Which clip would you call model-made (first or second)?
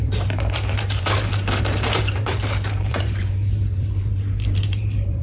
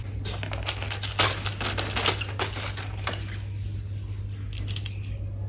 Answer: first